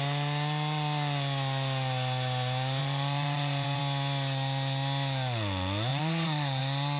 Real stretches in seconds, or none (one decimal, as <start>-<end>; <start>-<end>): 0.0-2.8; 3.8-5.9; 6.6-7.0